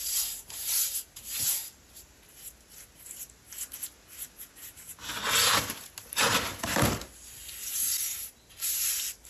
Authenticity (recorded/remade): recorded